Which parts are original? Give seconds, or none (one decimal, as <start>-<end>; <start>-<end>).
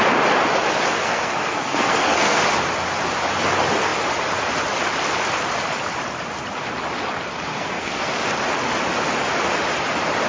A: 0.0-1.0; 2.4-7.5; 8.1-10.3